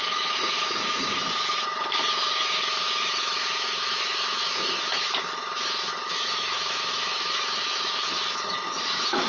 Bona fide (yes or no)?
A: no